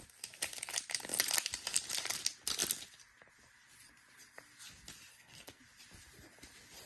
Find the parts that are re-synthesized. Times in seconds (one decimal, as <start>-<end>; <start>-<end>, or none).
5.1-5.6